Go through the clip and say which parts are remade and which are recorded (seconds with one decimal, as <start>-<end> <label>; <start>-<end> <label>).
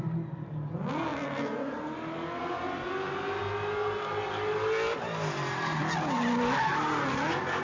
0.0-7.6 recorded